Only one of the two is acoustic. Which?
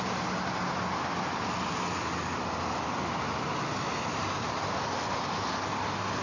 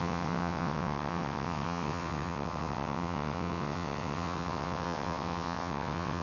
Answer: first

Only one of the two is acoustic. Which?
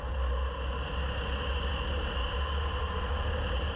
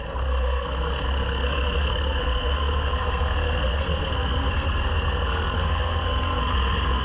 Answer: first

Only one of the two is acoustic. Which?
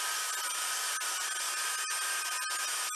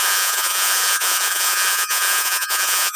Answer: first